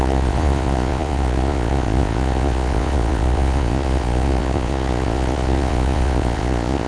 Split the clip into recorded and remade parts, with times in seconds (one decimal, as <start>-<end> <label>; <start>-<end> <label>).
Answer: 0.0-6.9 remade